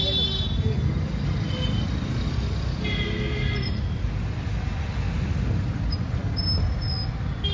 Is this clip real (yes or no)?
yes